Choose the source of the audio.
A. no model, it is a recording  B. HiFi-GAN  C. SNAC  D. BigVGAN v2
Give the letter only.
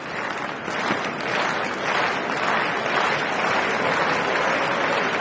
A